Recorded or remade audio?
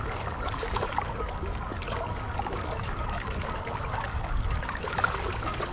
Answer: remade